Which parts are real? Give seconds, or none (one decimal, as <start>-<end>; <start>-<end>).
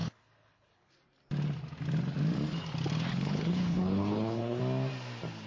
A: 0.9-3.1; 4.6-5.5